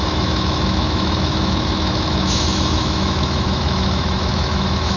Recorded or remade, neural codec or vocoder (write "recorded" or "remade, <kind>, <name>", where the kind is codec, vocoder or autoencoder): remade, autoencoder, DAC-VAE